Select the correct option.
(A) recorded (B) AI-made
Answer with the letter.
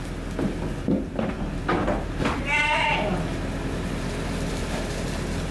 A